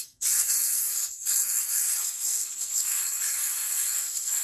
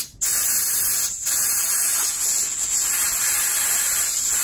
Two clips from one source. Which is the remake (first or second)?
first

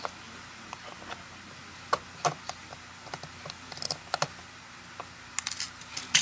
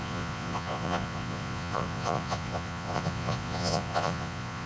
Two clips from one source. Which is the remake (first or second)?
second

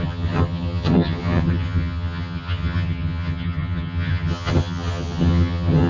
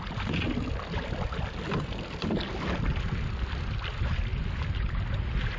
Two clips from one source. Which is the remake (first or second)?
first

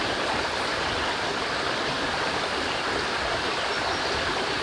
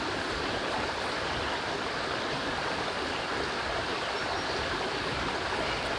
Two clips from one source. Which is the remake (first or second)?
first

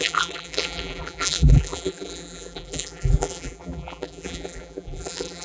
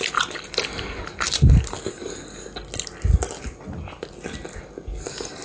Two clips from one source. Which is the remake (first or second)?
first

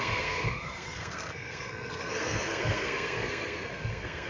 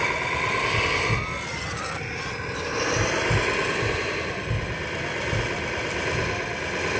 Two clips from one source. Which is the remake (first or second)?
first